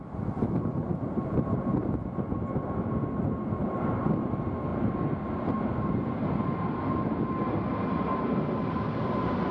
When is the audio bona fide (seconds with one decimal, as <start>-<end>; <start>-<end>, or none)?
0.0-9.5